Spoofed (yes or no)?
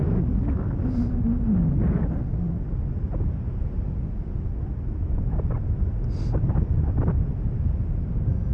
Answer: no